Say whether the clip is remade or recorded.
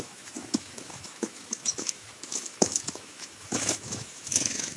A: remade